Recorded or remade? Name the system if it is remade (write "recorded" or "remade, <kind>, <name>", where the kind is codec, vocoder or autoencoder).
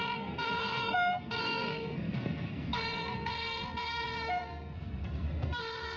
remade, codec, SNAC